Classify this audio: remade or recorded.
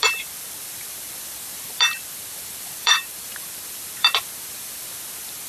remade